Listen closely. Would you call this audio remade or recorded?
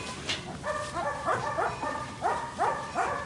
remade